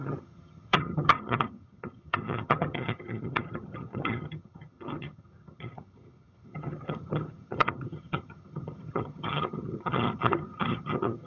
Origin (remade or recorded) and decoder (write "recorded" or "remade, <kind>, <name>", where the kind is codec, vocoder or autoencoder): remade, vocoder, HiFi-GAN